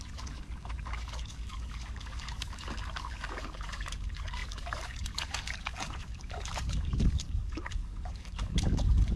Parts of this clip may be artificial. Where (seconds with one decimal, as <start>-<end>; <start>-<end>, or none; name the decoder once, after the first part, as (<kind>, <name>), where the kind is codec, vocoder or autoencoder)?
0.0-9.2 (codec, DAC)